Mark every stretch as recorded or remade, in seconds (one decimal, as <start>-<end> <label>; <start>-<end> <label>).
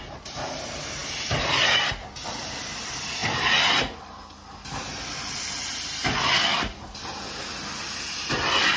0.0-8.8 recorded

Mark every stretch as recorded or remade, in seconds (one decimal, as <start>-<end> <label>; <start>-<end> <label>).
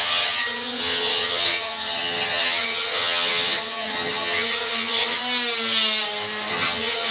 0.0-5.2 remade; 5.2-6.5 recorded; 6.5-7.1 remade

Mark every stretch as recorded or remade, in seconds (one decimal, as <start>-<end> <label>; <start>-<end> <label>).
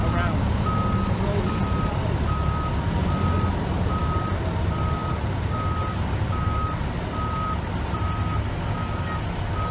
0.0-9.7 recorded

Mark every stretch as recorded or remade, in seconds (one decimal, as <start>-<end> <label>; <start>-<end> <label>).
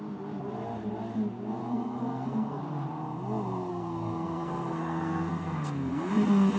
0.0-1.6 recorded; 1.6-2.6 remade; 2.6-3.7 recorded; 3.7-6.1 remade; 6.1-6.6 recorded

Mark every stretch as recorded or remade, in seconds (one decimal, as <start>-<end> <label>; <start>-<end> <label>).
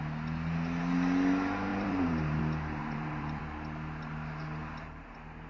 0.0-1.7 recorded; 1.7-2.4 remade; 2.4-2.8 recorded; 2.8-3.4 remade; 3.4-5.5 recorded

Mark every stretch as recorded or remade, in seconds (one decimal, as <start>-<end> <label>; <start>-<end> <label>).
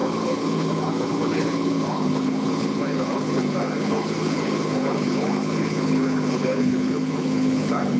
0.0-8.0 remade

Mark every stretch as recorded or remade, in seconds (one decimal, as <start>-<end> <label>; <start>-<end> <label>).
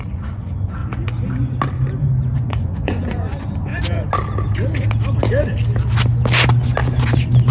0.0-0.8 remade; 0.8-2.0 recorded; 2.0-3.7 remade; 3.7-7.5 recorded